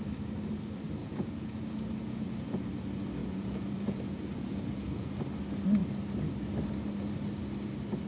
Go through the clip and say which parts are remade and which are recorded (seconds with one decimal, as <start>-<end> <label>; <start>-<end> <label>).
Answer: 0.0-1.0 recorded; 1.0-2.7 remade; 2.7-3.2 recorded; 3.2-5.1 remade; 5.1-8.1 recorded